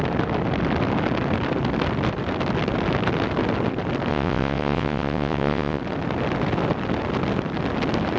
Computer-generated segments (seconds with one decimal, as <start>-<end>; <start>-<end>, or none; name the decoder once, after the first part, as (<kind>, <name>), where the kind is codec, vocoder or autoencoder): 4.1-5.8 (vocoder, WaveNeXt)